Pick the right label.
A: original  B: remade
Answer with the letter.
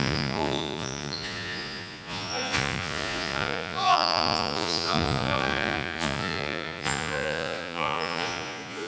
B